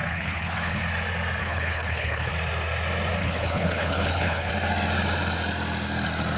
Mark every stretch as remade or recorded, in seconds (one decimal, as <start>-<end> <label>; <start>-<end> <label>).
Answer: 0.0-0.8 remade; 0.8-1.4 recorded; 1.4-2.3 remade; 2.3-3.2 recorded; 3.2-4.5 remade; 4.5-6.4 recorded